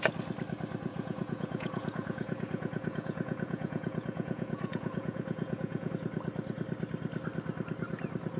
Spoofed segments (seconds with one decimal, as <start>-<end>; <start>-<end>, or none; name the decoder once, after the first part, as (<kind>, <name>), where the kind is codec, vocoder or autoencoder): 0.9-5.9 (vocoder, Vocos)

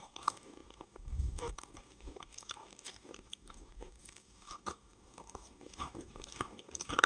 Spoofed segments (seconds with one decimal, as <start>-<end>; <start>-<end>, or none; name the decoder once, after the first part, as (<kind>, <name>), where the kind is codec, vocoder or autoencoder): 0.0-7.1 (codec, DAC)

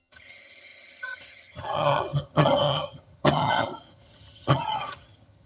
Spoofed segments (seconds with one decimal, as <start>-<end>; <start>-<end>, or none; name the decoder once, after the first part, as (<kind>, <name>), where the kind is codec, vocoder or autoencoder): 0.0-5.5 (vocoder, HiFi-GAN)

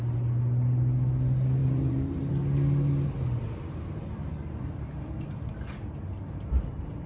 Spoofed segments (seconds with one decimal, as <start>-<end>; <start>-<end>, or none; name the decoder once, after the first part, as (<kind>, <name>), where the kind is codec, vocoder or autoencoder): 1.6-2.3 (vocoder, BigVGAN v2); 3.4-5.3

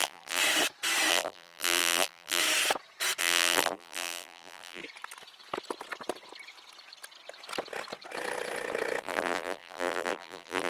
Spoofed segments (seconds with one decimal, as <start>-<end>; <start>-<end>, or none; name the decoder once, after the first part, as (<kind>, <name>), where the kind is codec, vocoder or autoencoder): 0.0-0.4 (vocoder, BigVGAN v2); 1.1-2.4; 3.2-4.8; 9.0-10.7

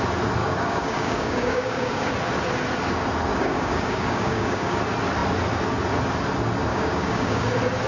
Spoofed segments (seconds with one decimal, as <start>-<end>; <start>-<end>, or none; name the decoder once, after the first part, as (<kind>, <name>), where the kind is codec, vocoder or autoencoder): 0.4-2.1 (codec, DAC); 3.3-4.8; 6.7-7.5

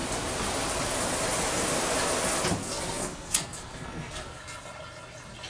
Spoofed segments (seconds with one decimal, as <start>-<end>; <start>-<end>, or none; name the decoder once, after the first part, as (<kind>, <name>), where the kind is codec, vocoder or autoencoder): 2.6-4.4 (codec, SNAC)

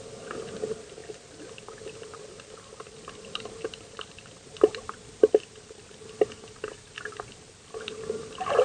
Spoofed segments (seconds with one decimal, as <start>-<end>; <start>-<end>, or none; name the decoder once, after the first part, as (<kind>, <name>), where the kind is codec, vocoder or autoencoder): none